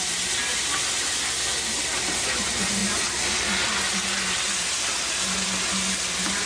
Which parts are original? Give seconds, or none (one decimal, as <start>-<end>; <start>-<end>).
0.0-6.5